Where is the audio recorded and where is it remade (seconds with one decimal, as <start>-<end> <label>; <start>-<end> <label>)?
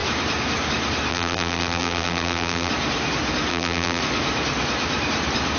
0.0-1.1 recorded; 1.1-2.7 remade; 2.7-3.5 recorded; 3.5-4.0 remade; 4.0-5.6 recorded